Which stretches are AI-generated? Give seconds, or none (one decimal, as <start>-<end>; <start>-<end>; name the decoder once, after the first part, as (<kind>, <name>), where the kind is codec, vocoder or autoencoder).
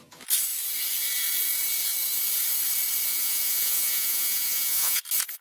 3.1-5.0 (vocoder, Vocos)